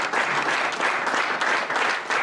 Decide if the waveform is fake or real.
real